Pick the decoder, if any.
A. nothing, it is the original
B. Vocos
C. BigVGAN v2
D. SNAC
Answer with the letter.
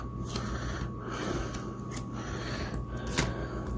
A